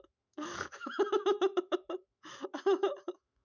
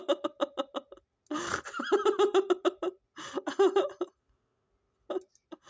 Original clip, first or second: second